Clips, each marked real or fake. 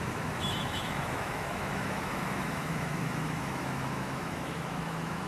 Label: fake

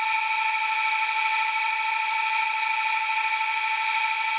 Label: real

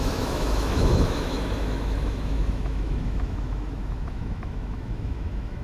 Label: fake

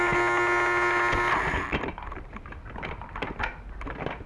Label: real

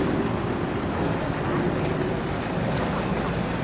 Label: real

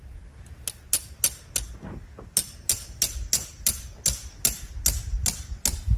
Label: real